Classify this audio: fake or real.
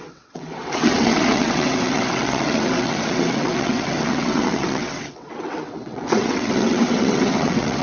fake